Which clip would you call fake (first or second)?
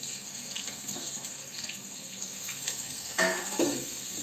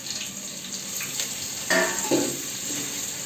first